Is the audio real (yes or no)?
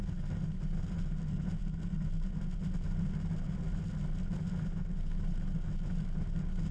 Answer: yes